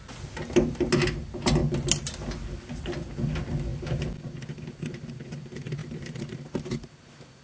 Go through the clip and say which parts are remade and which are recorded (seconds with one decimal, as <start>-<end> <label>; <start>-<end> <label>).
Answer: 0.0-5.8 recorded; 5.8-6.9 remade; 6.9-7.4 recorded